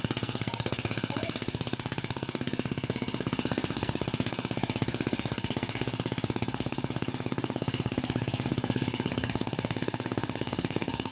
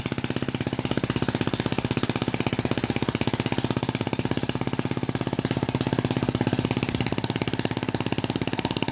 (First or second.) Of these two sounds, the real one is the second